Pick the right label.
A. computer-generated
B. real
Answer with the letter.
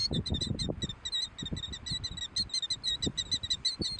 B